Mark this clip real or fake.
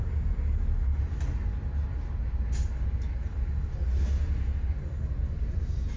real